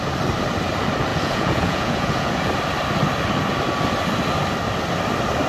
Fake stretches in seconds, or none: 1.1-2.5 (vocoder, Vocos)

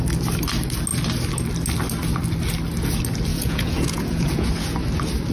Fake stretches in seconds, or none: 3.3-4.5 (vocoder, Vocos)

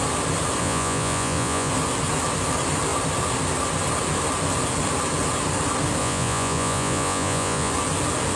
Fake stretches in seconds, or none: 0.6-1.7 (vocoder, Vocos); 6.0-7.7

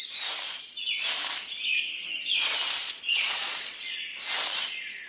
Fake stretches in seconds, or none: 2.8-3.8 (vocoder, Vocos)